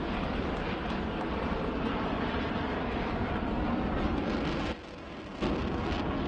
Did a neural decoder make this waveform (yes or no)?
no